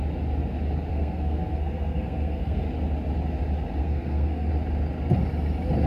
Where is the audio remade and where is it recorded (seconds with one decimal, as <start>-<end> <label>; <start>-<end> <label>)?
0.0-0.9 recorded; 0.9-2.6 remade; 2.6-3.8 recorded; 3.8-4.5 remade; 4.5-5.9 recorded